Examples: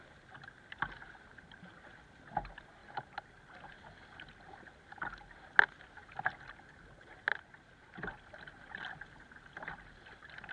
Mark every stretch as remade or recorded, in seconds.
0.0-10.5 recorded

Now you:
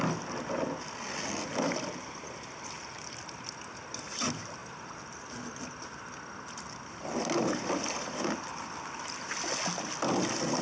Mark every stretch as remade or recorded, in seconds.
0.0-10.6 recorded

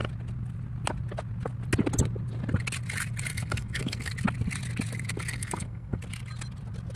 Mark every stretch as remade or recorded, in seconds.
0.0-3.3 recorded; 3.3-4.1 remade; 4.1-5.1 recorded; 5.1-6.0 remade; 6.0-7.0 recorded

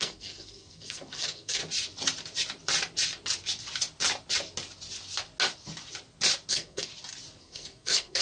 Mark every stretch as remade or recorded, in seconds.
0.0-1.6 remade; 1.6-6.5 recorded; 6.5-6.9 remade; 6.9-7.4 recorded; 7.4-8.2 remade

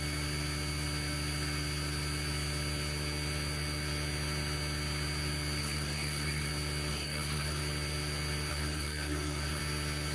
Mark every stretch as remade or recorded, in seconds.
0.0-5.6 recorded; 5.6-6.5 remade; 6.5-6.9 recorded; 6.9-7.6 remade; 7.6-8.5 recorded; 8.5-9.6 remade; 9.6-10.1 recorded

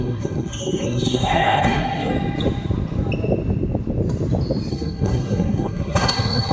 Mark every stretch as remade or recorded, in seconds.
0.0-2.1 remade; 2.1-4.7 recorded; 4.7-6.5 remade

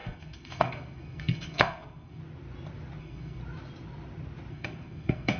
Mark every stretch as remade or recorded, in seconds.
0.0-2.2 remade; 2.2-3.0 recorded; 3.0-3.4 remade; 3.4-4.5 recorded; 4.5-5.4 remade

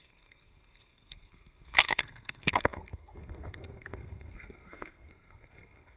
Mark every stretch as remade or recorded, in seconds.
0.0-6.0 remade